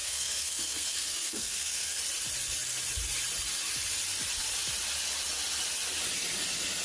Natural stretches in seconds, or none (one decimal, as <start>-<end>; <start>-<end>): 2.0-6.8